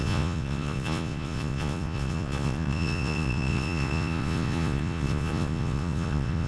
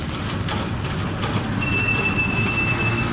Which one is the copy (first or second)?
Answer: first